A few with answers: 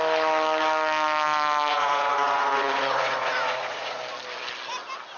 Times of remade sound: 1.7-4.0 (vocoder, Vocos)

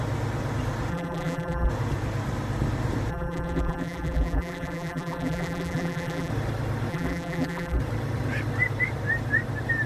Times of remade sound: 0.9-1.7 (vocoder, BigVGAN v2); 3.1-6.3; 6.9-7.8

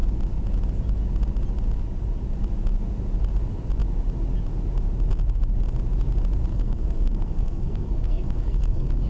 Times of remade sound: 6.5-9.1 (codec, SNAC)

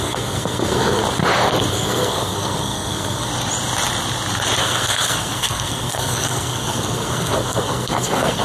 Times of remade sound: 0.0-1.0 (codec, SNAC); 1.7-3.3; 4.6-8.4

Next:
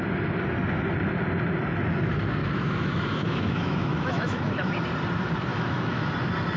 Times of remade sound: 2.4-4.7 (autoencoder, DAC-VAE); 5.5-6.1

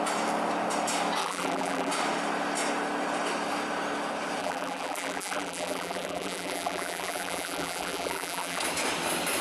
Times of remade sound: 1.2-1.9 (vocoder, BigVGAN v2); 4.4-8.6